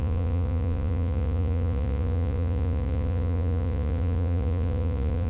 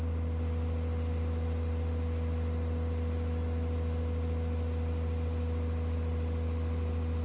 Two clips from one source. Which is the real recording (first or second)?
second